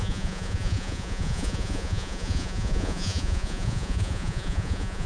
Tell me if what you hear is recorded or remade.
remade